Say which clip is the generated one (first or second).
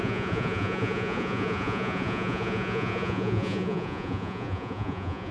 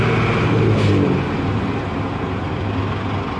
first